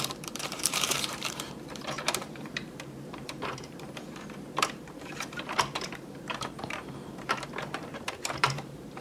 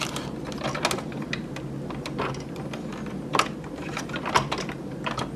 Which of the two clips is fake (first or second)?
first